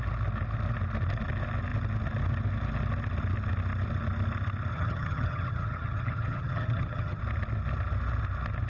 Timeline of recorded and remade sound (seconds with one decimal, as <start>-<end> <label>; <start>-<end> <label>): 0.0-4.7 recorded; 4.7-7.2 remade; 7.2-8.7 recorded